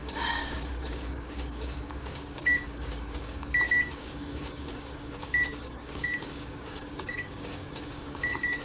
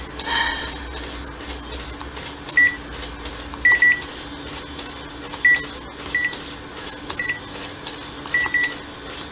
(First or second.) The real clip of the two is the second